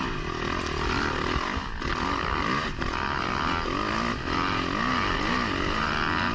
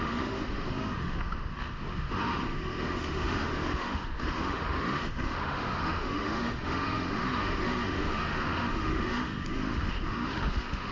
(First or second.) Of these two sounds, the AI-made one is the second